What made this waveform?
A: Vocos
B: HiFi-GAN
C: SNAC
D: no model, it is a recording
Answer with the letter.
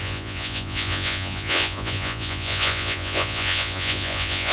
A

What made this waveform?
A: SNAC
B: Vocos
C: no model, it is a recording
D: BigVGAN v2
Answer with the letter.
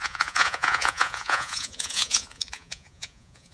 B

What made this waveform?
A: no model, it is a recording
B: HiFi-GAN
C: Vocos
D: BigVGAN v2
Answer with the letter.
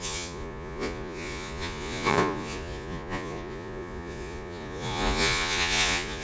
C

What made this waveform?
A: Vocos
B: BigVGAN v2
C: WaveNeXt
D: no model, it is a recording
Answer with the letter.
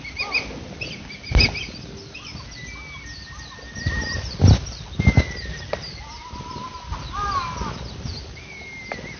D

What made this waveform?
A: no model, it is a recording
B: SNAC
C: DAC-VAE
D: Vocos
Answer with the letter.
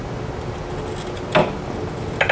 A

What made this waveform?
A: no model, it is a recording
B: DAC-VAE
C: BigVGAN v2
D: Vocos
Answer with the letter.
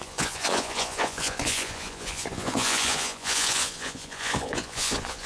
D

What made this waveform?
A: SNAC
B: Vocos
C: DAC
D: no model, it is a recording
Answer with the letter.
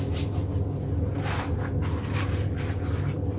D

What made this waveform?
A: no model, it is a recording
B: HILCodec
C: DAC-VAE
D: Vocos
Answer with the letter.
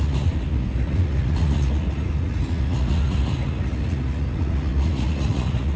D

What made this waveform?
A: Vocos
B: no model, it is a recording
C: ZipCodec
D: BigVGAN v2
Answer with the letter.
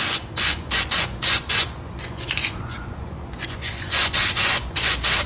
A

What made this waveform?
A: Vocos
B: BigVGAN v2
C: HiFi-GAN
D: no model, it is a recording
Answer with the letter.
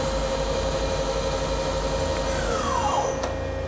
D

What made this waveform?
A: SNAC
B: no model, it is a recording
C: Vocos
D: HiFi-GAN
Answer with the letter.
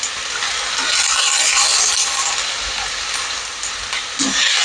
B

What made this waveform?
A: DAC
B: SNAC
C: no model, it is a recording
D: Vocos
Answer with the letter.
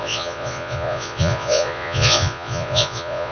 D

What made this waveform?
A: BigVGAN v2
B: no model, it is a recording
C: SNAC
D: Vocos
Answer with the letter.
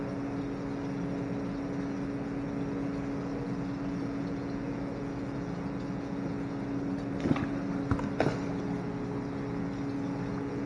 B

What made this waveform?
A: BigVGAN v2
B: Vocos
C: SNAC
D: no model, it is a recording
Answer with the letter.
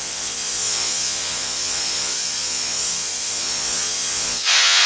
B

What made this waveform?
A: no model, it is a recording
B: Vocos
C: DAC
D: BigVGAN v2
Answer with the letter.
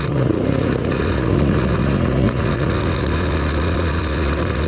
B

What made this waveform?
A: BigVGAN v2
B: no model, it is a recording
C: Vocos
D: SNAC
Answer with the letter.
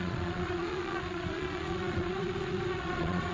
C